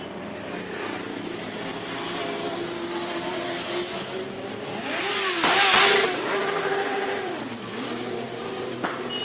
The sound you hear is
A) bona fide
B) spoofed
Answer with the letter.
A